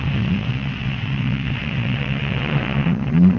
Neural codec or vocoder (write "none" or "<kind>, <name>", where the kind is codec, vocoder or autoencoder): vocoder, WaveNeXt